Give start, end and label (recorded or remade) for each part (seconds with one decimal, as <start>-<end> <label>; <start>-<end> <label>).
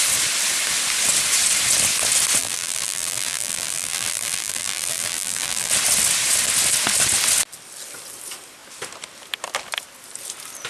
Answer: 0.0-2.4 recorded; 2.4-5.7 remade; 5.7-10.7 recorded